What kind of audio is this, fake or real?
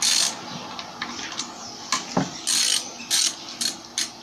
real